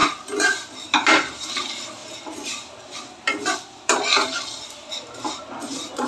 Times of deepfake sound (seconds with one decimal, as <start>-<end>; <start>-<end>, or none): none